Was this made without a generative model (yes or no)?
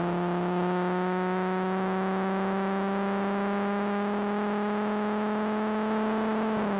yes